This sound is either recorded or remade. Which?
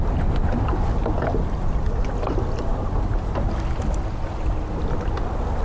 recorded